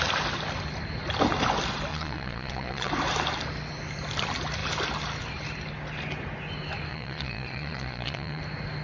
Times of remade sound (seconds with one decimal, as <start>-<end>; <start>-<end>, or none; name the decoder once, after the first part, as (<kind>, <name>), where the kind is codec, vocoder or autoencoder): 1.9-2.9 (vocoder, Vocos); 6.9-8.4